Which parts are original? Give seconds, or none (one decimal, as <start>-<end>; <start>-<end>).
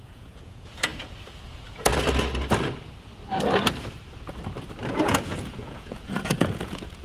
0.9-1.5; 1.9-4.9